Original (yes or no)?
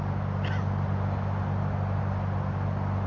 yes